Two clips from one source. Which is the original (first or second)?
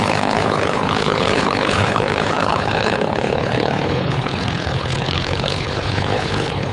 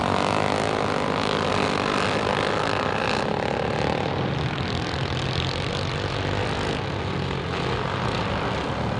second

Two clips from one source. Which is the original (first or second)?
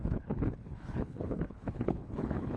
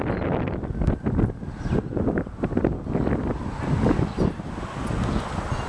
second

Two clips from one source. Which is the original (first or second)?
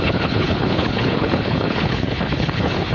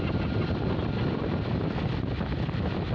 second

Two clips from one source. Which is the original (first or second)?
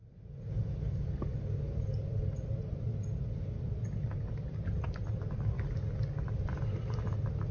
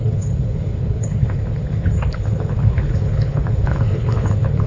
first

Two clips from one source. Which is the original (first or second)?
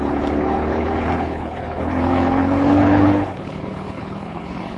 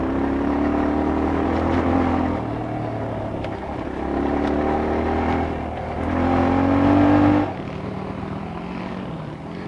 second